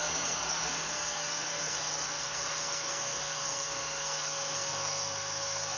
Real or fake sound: fake